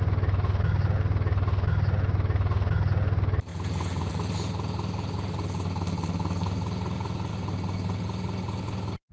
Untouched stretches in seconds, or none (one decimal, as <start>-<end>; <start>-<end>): 0.0-3.5; 4.1-9.1